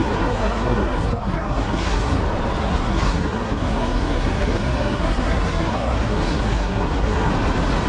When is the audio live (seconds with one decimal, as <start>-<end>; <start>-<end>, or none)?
2.2-2.6; 7.3-7.9